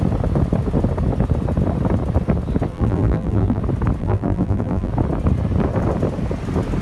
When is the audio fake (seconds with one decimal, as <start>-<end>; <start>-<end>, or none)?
2.7-3.6; 4.0-4.9